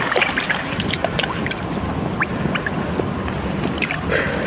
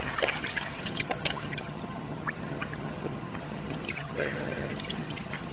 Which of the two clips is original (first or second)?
first